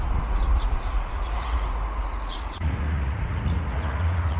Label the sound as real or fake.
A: fake